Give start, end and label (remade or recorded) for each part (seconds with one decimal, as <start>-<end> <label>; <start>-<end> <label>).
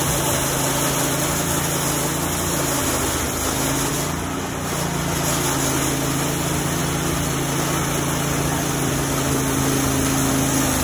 0.0-10.8 recorded